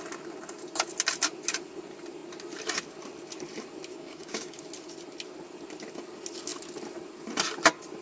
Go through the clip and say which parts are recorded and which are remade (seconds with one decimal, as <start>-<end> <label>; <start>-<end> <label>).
0.0-3.9 recorded; 3.9-4.6 remade; 4.6-8.0 recorded